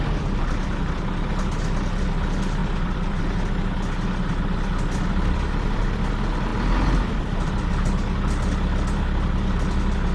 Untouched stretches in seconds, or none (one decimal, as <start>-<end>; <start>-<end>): 0.0-2.6; 3.2-10.1